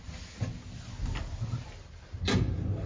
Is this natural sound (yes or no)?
yes